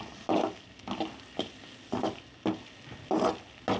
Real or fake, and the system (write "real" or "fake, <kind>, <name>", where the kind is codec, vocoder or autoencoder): real